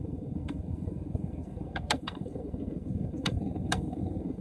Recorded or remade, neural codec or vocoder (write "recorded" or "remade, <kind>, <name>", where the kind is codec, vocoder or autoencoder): remade, codec, SNAC